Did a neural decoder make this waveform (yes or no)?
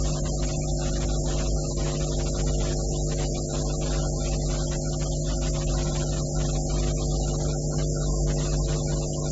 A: no